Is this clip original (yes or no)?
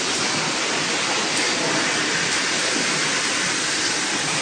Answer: yes